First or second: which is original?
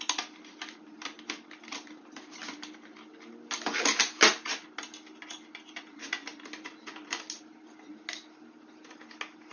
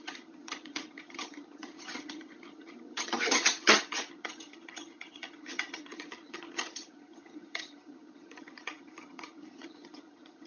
first